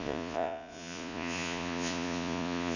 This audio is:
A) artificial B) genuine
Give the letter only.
A